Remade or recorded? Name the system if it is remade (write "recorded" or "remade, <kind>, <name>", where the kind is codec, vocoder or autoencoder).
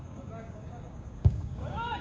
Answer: remade, codec, DAC